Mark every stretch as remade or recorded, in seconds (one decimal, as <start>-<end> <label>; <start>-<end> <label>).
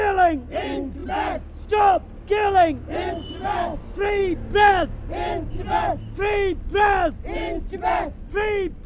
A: 0.0-8.9 recorded